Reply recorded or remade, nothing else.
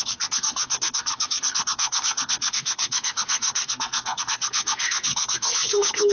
remade